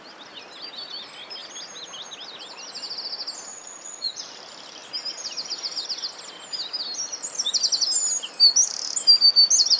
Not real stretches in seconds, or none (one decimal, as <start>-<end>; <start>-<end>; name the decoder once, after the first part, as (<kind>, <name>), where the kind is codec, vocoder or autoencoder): 3.5-4.2 (vocoder, Vocos)